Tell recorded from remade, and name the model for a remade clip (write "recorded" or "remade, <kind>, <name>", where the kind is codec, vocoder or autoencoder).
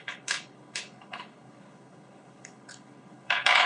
remade, codec, HILCodec